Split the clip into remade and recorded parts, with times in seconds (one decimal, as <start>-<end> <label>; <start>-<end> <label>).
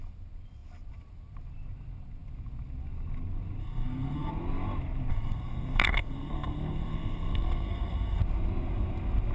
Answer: 0.0-3.6 recorded; 3.6-4.3 remade; 4.3-5.1 recorded; 5.1-8.2 remade; 8.2-9.3 recorded